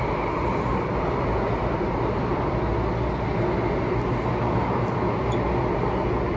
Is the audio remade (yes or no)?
no